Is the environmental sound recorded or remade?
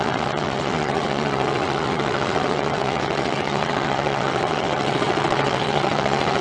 remade